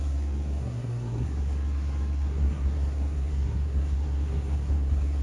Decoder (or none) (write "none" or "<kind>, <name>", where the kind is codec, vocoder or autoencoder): codec, SNAC